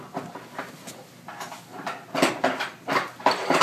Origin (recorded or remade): recorded